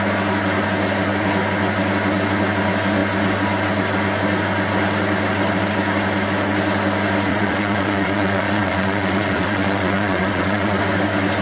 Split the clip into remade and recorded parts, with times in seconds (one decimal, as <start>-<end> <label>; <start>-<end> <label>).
0.0-7.3 recorded; 7.3-10.8 remade; 10.8-11.4 recorded